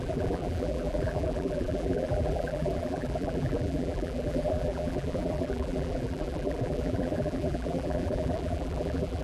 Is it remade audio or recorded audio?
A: remade